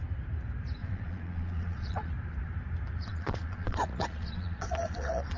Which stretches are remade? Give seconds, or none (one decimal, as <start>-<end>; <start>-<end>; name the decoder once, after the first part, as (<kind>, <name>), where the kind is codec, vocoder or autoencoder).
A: 0.8-2.1 (vocoder, Vocos); 3.0-5.4